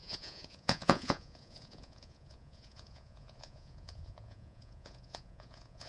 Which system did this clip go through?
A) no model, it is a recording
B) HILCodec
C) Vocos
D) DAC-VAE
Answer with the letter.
C